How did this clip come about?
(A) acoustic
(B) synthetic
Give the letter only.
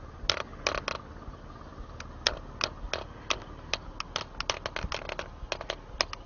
A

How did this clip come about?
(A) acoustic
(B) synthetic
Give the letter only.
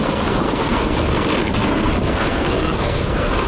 B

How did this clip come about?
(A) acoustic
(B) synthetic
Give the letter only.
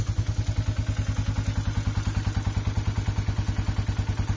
A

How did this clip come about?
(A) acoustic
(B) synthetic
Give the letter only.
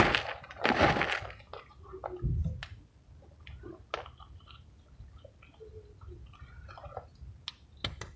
A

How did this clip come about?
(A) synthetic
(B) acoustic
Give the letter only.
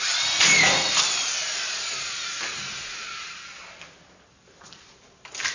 B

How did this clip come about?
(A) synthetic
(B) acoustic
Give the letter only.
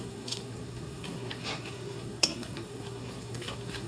A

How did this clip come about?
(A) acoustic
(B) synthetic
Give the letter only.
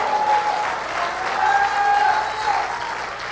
A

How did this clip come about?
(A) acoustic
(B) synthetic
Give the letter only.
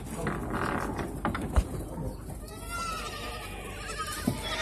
B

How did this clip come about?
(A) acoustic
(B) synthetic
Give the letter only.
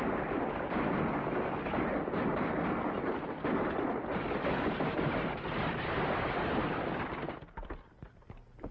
A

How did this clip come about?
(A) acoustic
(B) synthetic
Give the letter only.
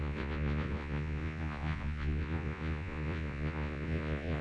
B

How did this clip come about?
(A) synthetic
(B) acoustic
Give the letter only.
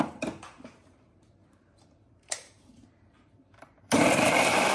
A